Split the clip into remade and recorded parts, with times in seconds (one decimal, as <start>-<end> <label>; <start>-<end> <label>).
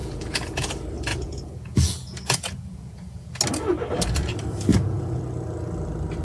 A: 0.0-0.7 remade; 0.7-1.1 recorded; 1.1-3.4 remade; 3.4-4.7 recorded; 4.7-5.2 remade; 5.2-6.2 recorded